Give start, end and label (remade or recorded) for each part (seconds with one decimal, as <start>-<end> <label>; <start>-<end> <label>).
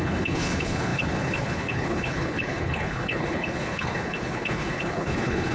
0.0-5.5 remade